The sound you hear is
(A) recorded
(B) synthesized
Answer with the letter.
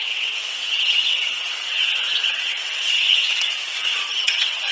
B